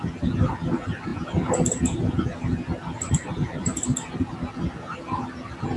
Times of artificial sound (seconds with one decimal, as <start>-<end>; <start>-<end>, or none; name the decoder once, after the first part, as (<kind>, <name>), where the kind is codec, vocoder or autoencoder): none